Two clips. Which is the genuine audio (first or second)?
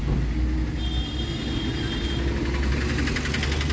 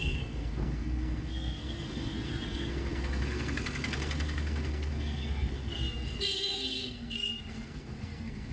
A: first